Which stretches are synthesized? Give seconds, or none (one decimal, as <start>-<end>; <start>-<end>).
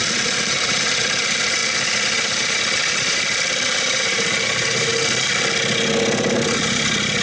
0.0-1.6; 2.9-4.9